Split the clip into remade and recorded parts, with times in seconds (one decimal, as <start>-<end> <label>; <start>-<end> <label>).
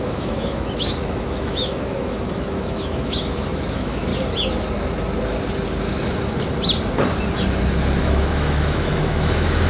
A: 0.0-4.1 remade; 4.1-8.0 recorded; 8.0-9.7 remade